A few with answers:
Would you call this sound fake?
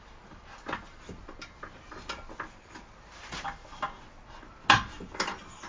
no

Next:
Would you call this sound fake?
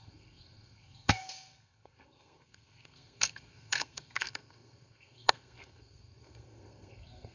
yes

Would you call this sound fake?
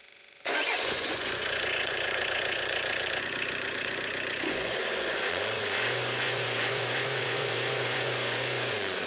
yes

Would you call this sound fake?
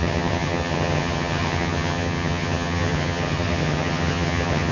yes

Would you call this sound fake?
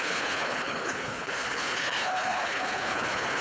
yes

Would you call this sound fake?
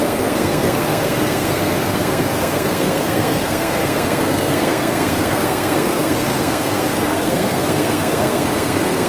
yes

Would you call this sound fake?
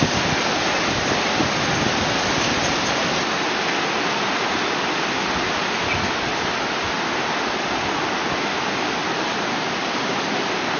no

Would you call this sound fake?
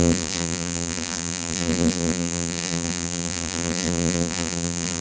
yes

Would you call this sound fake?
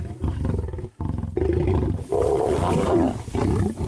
no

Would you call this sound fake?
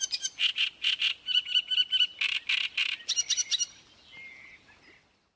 no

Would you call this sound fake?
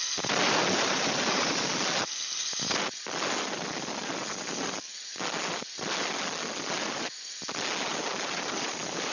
no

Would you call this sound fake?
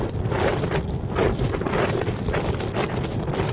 no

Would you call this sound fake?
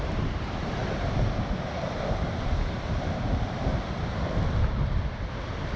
yes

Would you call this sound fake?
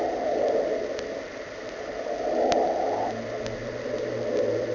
no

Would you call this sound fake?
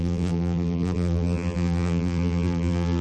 yes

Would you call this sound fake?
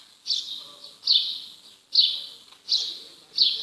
no